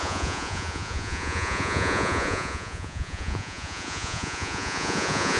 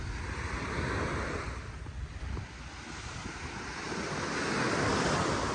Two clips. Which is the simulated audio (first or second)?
first